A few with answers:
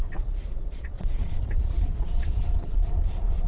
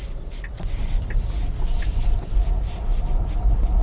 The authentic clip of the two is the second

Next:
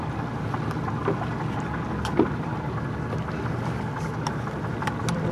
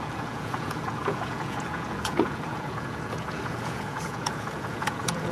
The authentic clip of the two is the first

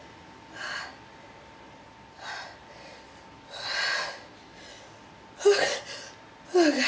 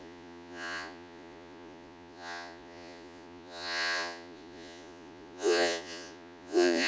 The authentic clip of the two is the first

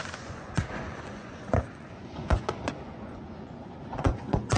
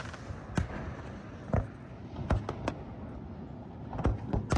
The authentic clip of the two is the second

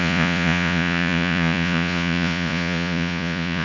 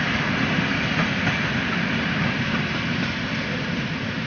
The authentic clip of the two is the second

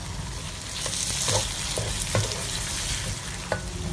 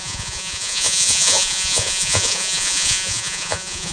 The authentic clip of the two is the first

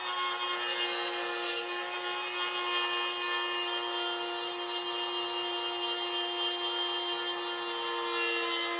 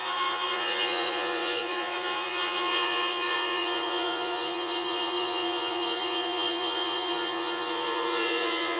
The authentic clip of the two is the first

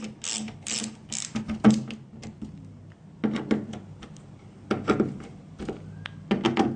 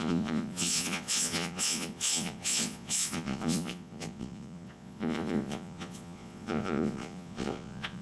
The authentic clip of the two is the first